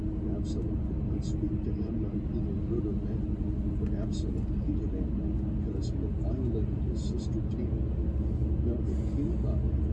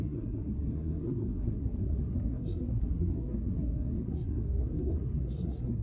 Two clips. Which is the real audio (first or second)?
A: first